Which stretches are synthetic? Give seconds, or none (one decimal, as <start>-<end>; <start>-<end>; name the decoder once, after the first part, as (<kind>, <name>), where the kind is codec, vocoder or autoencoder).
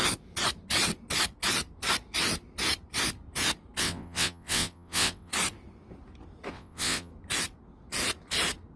3.8-5.3 (vocoder, WaveNeXt); 6.5-7.1